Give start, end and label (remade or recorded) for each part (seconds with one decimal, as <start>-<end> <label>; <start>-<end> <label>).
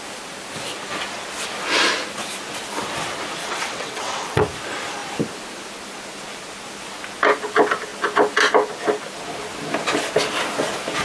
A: 0.0-3.4 recorded; 3.4-4.4 remade; 4.4-11.0 recorded